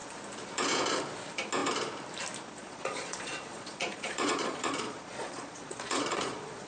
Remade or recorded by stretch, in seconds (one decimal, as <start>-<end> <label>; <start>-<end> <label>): 0.0-2.6 recorded; 2.6-6.7 remade

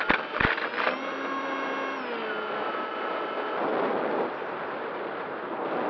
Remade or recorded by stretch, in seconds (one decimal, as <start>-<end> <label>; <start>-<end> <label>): 0.0-5.9 recorded

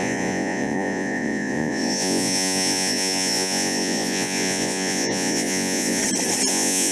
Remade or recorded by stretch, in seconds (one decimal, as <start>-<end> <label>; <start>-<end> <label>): 0.0-6.0 remade; 6.0-6.5 recorded; 6.5-6.9 remade

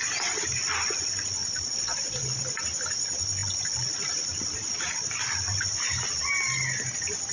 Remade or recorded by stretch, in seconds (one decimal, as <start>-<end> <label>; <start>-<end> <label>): 0.0-1.4 recorded; 1.4-2.4 remade; 2.4-7.3 recorded

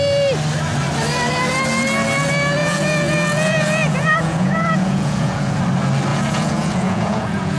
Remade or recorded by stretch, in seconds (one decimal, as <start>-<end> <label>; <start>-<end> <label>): 0.0-2.6 recorded; 2.6-5.6 remade; 5.6-6.1 recorded; 6.1-7.6 remade

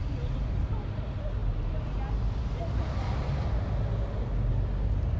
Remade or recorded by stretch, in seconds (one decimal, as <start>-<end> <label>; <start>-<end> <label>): 0.0-5.2 recorded

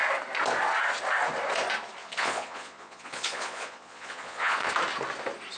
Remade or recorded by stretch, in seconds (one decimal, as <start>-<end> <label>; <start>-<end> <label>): 0.0-2.0 recorded; 2.0-4.7 remade; 4.7-5.6 recorded

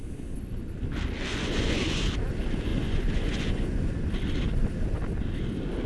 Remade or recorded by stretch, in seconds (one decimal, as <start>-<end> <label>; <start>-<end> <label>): 0.0-1.3 recorded; 1.3-2.1 remade; 2.1-2.7 recorded; 2.7-3.9 remade; 3.9-5.9 recorded